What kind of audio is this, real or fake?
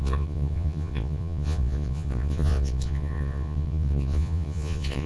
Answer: fake